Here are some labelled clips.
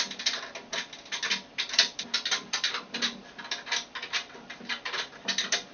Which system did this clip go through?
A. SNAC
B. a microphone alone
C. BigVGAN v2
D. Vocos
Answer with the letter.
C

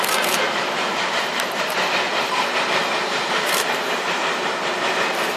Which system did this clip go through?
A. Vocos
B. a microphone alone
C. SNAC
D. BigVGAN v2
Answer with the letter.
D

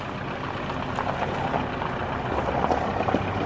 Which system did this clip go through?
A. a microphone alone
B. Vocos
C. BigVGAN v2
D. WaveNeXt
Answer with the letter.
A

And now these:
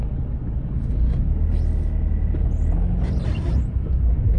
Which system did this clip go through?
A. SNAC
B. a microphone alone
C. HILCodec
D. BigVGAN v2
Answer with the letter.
B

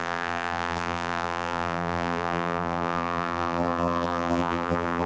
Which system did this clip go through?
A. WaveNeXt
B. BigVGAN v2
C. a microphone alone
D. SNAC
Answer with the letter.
B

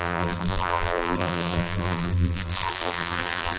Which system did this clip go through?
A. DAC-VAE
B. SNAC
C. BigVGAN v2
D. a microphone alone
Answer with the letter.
C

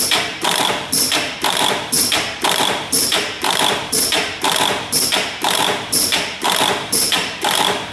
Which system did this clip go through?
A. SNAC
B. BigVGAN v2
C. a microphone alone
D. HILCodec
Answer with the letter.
B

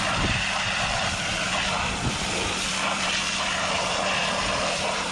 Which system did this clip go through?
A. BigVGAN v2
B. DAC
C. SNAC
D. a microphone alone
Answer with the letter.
A